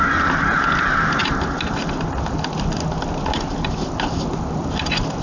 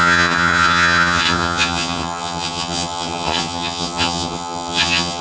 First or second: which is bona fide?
first